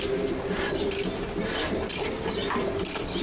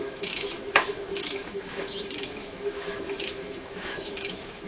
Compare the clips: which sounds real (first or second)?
first